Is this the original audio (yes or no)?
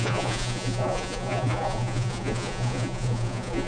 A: no